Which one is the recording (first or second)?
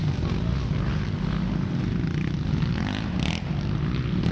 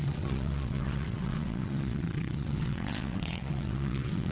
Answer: first